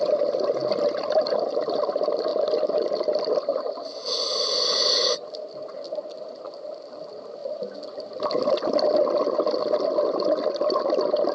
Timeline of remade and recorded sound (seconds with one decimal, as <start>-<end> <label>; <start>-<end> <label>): 0.0-11.3 recorded